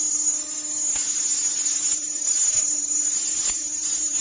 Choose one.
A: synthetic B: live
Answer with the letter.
A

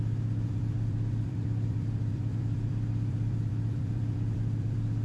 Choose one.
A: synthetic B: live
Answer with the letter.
A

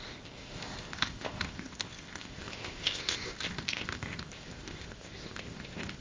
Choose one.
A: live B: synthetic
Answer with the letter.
B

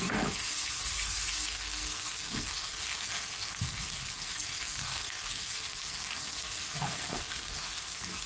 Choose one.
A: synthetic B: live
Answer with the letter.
A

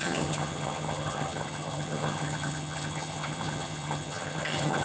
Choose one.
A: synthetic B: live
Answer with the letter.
A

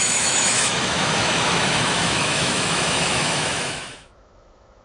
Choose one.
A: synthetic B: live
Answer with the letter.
A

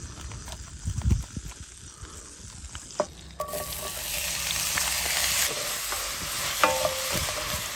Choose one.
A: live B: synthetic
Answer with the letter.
A